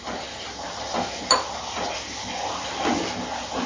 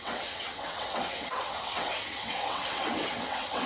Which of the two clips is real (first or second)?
first